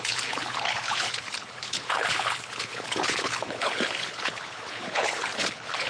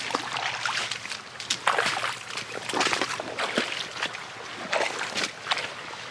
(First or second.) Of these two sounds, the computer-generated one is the first